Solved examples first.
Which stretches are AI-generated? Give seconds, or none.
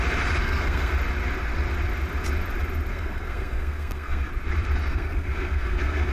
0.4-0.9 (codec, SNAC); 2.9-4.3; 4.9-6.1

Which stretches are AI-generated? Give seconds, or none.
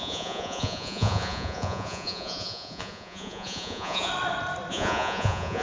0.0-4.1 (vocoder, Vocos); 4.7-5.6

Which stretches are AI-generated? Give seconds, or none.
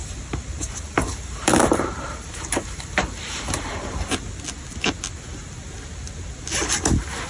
0.0-4.4 (vocoder, BigVGAN v2)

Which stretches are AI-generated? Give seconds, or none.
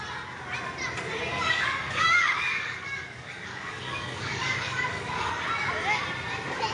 1.3-5.3 (codec, DAC)